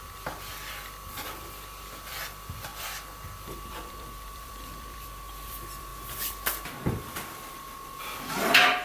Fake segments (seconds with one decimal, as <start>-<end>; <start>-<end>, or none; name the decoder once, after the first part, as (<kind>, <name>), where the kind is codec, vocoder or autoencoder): 0.0-5.9 (vocoder, BigVGAN v2); 8.0-8.8